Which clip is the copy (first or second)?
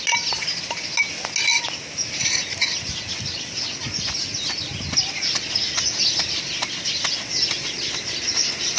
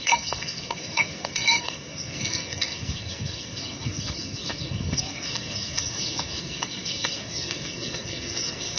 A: second